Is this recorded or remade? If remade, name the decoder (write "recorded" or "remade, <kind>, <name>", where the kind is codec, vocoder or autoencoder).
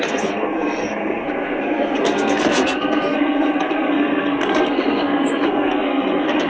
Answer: remade, codec, SNAC